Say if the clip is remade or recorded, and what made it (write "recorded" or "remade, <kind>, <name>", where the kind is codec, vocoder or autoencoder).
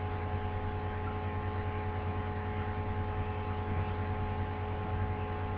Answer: recorded